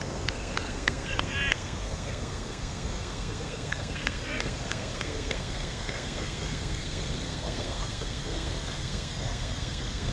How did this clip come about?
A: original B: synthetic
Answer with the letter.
B